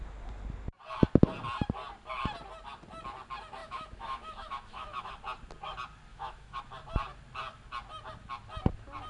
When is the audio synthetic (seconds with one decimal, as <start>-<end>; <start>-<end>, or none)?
3.6-5.1; 6.1-6.6